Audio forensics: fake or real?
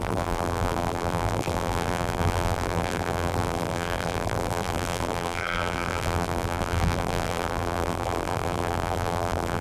fake